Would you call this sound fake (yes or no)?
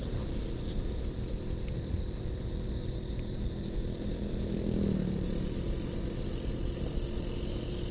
no